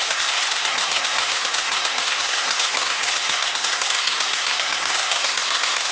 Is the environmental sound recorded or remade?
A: remade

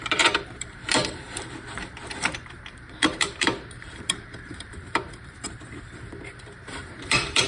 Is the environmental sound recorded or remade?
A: remade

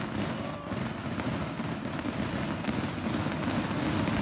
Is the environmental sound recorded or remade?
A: recorded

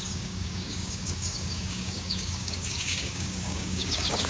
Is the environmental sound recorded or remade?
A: remade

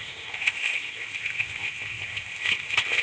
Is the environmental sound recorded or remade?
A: remade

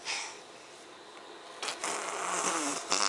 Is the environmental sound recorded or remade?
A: recorded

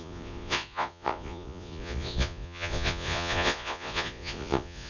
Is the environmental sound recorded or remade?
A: remade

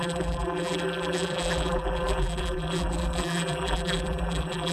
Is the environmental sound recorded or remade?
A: remade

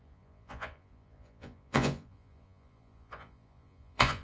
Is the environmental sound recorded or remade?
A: remade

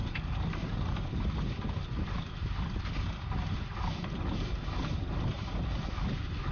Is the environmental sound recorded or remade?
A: recorded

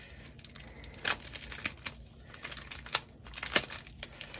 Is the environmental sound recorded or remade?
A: recorded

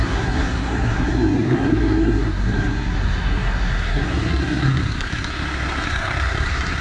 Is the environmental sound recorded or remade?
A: remade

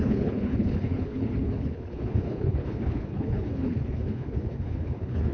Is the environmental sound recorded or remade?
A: remade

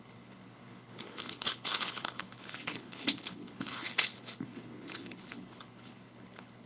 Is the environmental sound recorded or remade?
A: remade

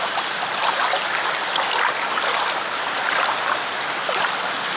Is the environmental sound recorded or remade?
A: recorded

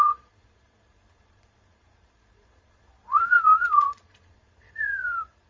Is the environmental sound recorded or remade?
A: remade